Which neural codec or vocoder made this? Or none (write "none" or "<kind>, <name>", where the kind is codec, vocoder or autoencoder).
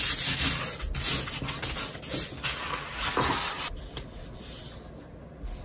none